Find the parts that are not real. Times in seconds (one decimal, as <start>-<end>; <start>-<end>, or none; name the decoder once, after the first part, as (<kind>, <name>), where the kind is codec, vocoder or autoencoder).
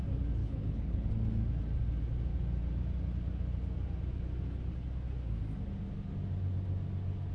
0.4-1.1 (codec, HILCodec)